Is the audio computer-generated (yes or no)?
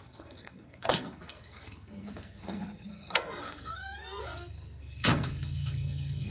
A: yes